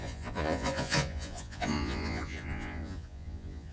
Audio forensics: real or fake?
fake